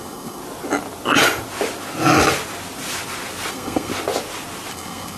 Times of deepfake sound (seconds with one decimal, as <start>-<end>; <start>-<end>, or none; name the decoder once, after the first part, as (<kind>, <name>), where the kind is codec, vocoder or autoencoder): 0.0-0.4 (codec, SNAC); 3.5-3.9; 4.7-5.2

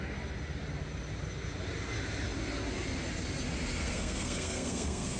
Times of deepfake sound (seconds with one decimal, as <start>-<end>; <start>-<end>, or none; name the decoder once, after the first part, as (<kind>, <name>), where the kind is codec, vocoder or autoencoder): 3.8-5.2 (codec, SNAC)

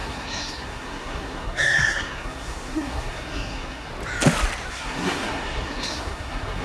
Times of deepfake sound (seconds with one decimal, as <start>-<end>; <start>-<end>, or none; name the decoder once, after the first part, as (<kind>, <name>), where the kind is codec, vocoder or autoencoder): 0.0-3.9 (codec, SNAC); 4.7-6.6

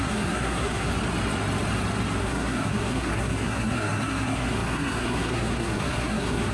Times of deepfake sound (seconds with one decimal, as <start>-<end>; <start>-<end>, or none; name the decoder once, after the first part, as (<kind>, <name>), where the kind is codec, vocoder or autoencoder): 0.0-0.9 (codec, SNAC); 2.2-6.5

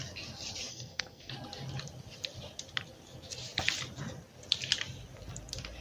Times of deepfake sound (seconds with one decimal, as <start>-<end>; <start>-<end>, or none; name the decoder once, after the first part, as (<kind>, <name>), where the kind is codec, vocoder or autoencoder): 0.7-1.3 (codec, SNAC)

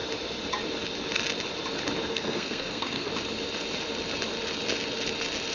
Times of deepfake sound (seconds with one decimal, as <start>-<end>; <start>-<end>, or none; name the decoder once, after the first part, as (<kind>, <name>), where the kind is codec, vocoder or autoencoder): 2.1-3.1 (codec, SNAC)

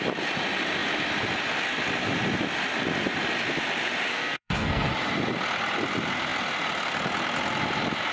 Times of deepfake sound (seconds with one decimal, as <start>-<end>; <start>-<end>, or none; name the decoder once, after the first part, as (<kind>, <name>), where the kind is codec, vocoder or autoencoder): 4.1-4.9 (codec, SNAC)